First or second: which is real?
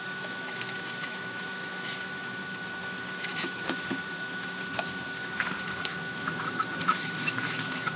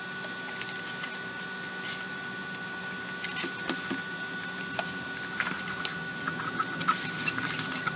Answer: second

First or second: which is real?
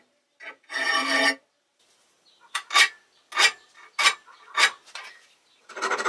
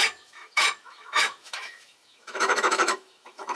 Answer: first